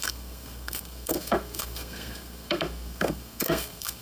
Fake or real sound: fake